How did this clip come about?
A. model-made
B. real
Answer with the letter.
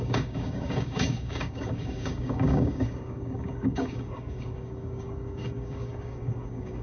A